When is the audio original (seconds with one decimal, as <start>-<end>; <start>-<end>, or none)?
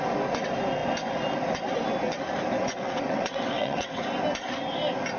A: 0.0-2.6; 4.0-5.2